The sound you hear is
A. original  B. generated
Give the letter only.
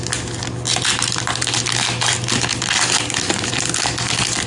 A